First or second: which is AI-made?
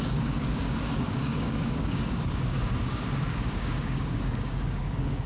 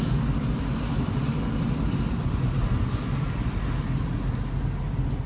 first